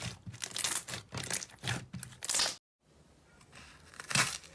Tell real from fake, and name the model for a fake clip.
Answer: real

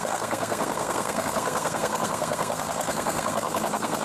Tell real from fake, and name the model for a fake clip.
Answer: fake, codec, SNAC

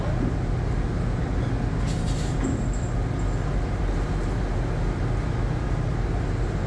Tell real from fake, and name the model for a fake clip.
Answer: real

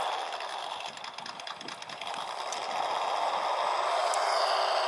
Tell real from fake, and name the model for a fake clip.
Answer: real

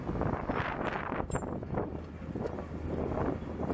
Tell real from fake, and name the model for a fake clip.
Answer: real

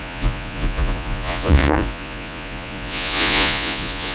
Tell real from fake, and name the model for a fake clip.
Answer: fake, vocoder, Vocos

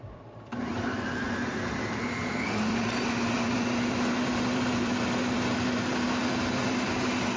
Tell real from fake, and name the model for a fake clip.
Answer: fake, vocoder, BigVGAN v2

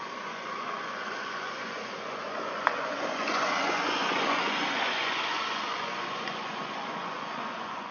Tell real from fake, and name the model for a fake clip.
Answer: fake, vocoder, Vocos